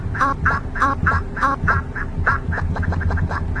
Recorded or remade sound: recorded